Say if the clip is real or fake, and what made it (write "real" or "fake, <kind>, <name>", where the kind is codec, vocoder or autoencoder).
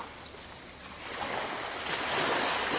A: real